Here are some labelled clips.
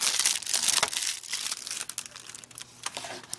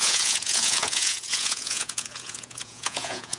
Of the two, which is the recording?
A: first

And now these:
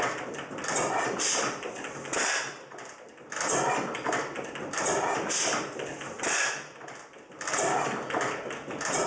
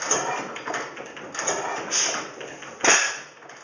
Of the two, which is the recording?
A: second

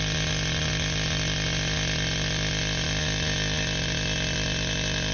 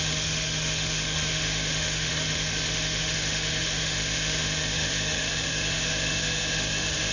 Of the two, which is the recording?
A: first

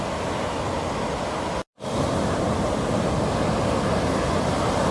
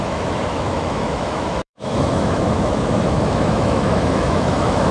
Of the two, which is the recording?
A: first